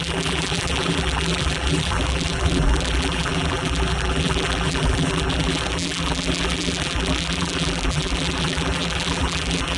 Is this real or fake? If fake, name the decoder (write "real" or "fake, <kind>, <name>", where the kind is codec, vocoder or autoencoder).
fake, vocoder, BigVGAN v2